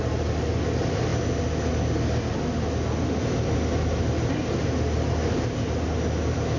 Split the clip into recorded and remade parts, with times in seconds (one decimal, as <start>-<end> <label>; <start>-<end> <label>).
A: 0.0-6.6 recorded